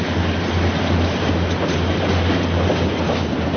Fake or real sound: real